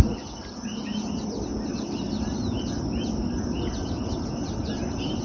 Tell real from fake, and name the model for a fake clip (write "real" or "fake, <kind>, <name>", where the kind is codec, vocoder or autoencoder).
real